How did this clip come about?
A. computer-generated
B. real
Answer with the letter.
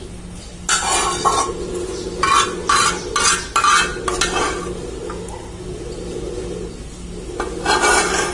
B